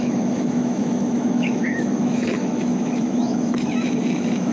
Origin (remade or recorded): remade